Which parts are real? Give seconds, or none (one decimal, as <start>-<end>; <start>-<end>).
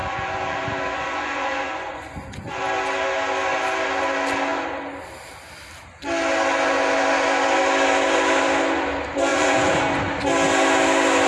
2.6-9.3; 9.8-11.3